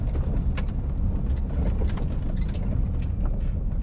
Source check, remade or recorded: recorded